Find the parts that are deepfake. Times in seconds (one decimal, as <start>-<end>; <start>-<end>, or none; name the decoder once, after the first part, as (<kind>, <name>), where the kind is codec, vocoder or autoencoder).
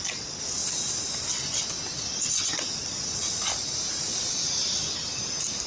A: none